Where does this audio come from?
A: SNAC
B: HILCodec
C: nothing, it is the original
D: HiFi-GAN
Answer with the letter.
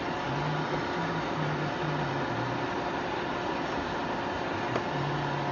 C